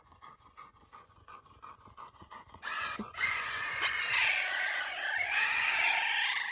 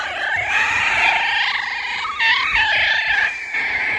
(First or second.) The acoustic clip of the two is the second